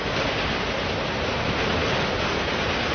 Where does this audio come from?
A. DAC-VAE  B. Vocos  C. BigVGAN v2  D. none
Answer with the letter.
D